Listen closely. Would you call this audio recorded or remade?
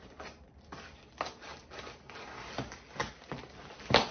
recorded